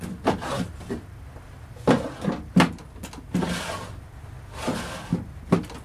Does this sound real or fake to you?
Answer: real